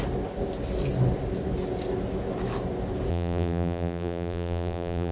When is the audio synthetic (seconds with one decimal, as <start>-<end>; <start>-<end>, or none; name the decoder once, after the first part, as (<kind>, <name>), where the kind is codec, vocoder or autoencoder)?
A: 3.1-5.1 (vocoder, BigVGAN v2)